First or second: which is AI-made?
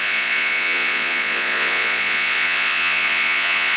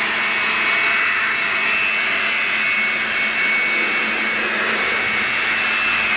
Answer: first